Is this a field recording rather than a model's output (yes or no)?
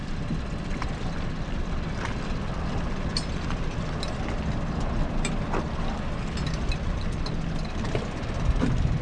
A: yes